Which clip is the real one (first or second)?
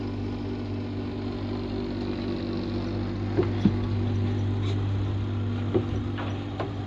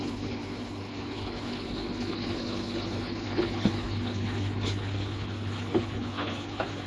first